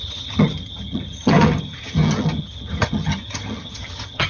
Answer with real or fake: fake